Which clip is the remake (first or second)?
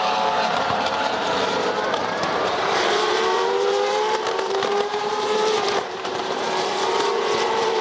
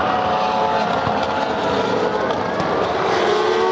first